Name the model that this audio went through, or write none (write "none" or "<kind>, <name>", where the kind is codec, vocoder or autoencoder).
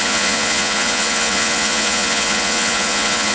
vocoder, Vocos